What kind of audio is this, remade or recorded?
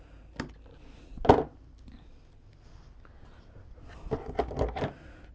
recorded